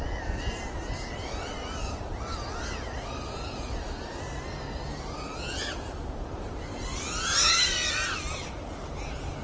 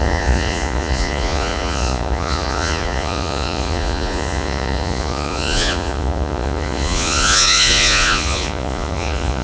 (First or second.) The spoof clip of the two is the second